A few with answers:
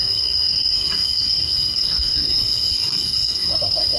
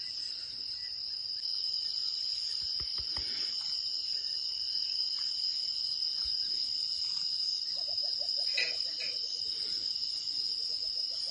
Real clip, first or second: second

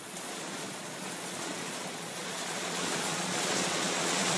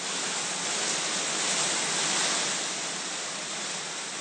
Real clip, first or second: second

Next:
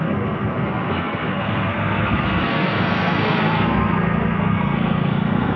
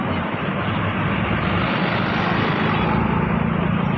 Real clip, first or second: second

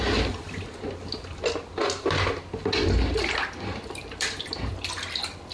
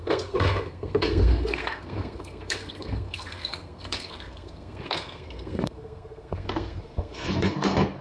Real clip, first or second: first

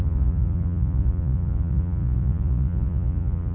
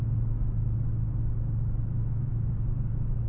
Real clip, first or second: second